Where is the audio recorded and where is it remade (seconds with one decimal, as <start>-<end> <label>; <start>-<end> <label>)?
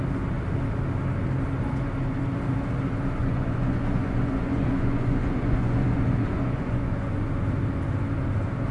0.0-3.2 recorded; 3.2-7.2 remade; 7.2-8.7 recorded